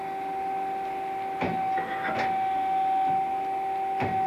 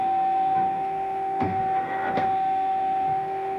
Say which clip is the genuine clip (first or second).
first